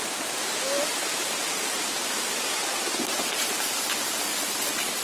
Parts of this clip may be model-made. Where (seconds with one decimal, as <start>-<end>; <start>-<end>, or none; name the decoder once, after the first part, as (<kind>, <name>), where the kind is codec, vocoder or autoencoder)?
0.9-3.8 (vocoder, BigVGAN v2)